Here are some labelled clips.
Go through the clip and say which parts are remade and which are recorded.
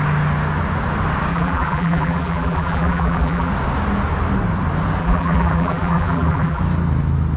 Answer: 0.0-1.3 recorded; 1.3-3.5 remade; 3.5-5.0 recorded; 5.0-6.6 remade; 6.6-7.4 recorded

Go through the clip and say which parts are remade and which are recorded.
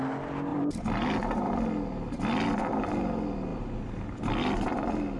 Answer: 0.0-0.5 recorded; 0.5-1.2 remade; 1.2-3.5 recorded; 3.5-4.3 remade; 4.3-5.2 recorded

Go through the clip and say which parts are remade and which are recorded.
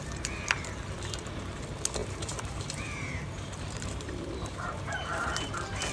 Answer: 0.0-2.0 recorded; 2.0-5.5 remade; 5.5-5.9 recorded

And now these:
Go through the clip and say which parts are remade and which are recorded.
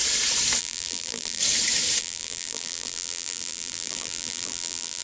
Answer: 0.0-0.6 recorded; 0.6-1.4 remade; 1.4-2.0 recorded; 2.0-5.0 remade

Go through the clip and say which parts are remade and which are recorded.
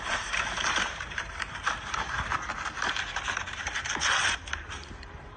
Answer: 0.0-2.3 remade; 2.3-4.5 recorded; 4.5-5.4 remade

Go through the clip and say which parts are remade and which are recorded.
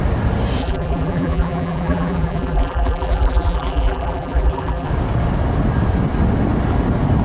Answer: 0.0-0.6 recorded; 0.6-4.9 remade; 4.9-7.2 recorded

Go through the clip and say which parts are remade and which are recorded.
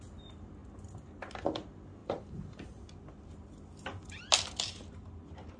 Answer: 0.0-2.0 recorded; 2.0-2.8 remade; 2.8-5.6 recorded